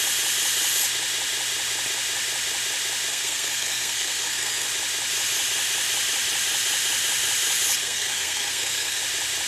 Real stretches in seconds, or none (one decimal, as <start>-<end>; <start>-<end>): 0.0-3.1; 4.7-7.8; 9.0-9.5